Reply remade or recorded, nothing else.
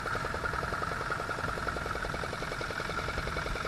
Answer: recorded